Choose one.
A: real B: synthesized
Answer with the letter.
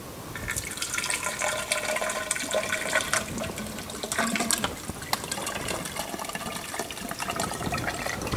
B